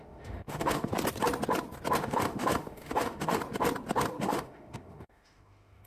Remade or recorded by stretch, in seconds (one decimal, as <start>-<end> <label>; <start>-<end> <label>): 0.0-0.9 remade; 0.9-2.0 recorded; 2.0-3.4 remade; 3.4-4.2 recorded; 4.2-5.9 remade